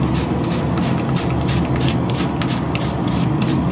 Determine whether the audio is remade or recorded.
recorded